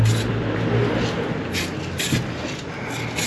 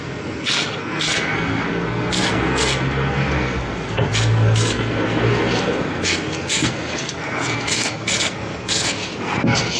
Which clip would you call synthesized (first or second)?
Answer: second